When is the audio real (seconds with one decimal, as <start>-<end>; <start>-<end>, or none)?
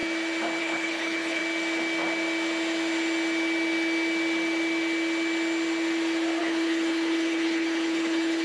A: 0.0-0.6; 1.4-6.4